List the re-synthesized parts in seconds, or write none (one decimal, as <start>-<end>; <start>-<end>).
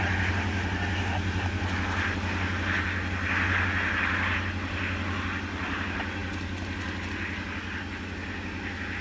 none